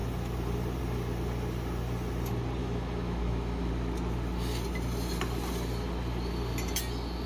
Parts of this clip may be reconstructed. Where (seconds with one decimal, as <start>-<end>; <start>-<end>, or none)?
2.6-3.7